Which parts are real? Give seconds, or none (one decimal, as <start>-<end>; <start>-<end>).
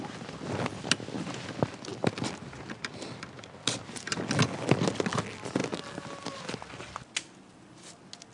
0.0-8.3